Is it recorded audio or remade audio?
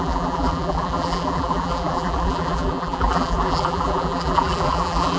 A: remade